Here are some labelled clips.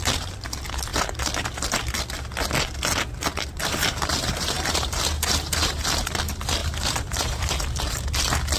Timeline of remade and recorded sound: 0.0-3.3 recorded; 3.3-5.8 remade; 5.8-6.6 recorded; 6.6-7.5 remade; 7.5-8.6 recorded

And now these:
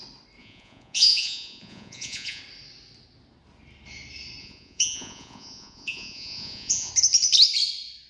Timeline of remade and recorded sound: 0.0-0.4 recorded; 0.4-2.4 remade; 2.4-4.4 recorded; 4.4-6.9 remade; 6.9-8.1 recorded

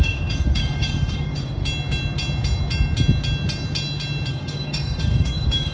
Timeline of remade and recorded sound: 0.0-1.6 remade; 1.6-4.3 recorded; 4.3-5.7 remade

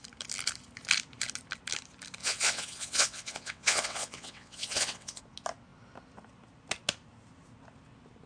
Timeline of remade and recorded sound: 0.0-2.2 recorded; 2.2-5.2 remade; 5.2-8.3 recorded

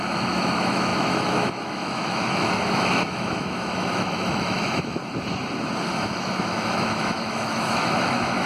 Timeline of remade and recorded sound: 0.0-5.0 remade; 5.0-5.8 recorded; 5.8-8.5 remade